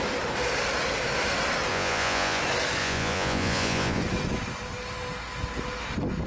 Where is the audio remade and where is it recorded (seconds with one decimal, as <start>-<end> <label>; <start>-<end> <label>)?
0.0-1.7 recorded; 1.7-2.4 remade; 2.4-2.8 recorded; 2.8-4.0 remade; 4.0-6.3 recorded